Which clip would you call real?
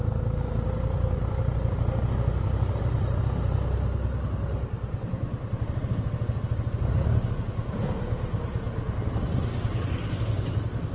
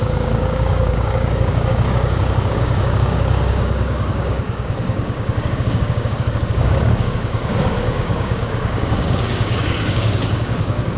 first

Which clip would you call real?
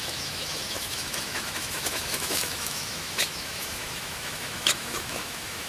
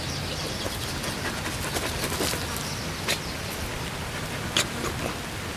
second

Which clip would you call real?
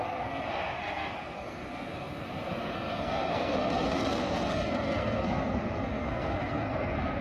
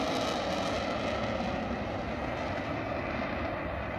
second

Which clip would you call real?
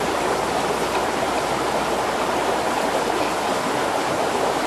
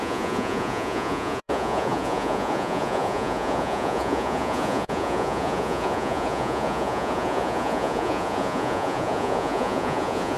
first